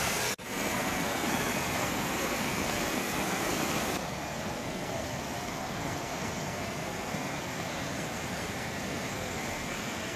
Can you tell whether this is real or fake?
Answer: fake